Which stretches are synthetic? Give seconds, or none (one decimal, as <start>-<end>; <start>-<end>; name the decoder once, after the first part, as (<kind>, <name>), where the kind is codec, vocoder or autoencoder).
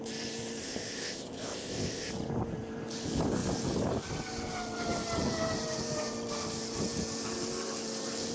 0.6-2.1 (codec, ZipCodec)